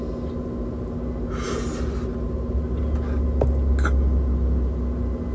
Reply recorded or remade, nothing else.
recorded